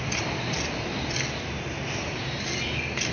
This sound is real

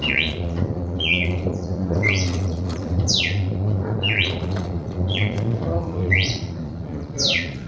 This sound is fake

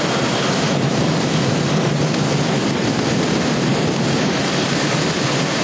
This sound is real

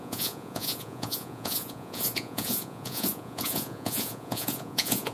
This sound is fake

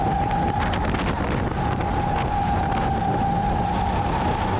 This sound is real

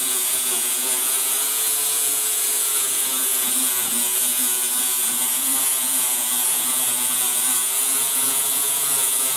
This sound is fake